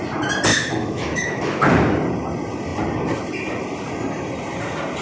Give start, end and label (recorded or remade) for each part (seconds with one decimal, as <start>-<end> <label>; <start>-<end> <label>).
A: 0.0-0.5 recorded; 0.5-1.6 remade; 1.6-5.0 recorded